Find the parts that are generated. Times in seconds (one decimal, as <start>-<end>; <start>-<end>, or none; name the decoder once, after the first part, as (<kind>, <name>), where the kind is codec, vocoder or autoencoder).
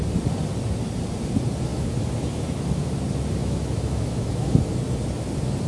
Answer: 1.7-2.9 (autoencoder, DAC-VAE); 3.4-4.6